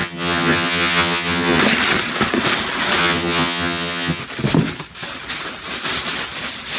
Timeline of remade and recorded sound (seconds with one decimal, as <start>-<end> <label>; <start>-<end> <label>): 0.0-1.6 remade; 1.6-3.0 recorded; 3.0-4.2 remade; 4.2-6.8 recorded